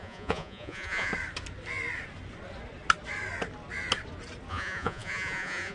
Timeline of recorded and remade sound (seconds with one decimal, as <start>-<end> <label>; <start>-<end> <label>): 0.0-1.1 remade; 1.1-4.5 recorded; 4.5-5.7 remade